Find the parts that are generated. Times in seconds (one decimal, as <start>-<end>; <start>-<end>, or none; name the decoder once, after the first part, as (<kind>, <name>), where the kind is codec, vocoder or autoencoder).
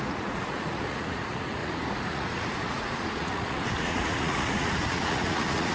0.0-5.7 (vocoder, Vocos)